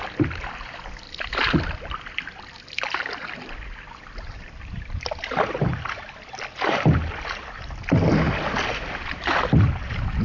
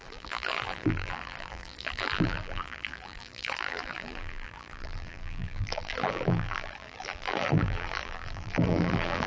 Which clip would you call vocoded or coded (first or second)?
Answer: second